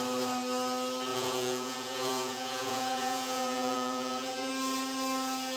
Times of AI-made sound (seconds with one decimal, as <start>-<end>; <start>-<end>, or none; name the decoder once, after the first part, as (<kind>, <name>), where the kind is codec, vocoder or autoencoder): 1.1-4.5 (vocoder, Vocos)